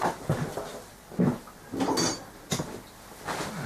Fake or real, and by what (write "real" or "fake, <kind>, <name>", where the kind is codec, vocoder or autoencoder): real